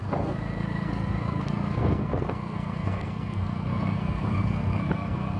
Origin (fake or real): fake